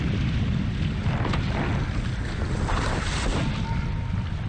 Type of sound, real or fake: real